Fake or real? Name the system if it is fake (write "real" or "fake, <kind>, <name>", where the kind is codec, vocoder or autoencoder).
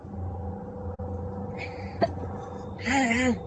real